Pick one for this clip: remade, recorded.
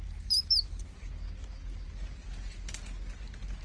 recorded